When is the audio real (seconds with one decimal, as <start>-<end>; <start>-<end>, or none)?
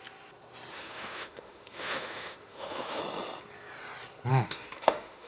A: 0.0-0.7; 3.0-4.3